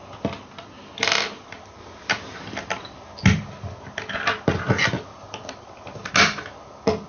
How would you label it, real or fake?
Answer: real